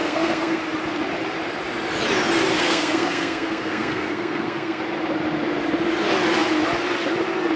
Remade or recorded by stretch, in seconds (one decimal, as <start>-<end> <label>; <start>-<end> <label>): 0.0-0.6 remade; 0.6-2.5 recorded; 2.5-4.8 remade; 4.8-7.6 recorded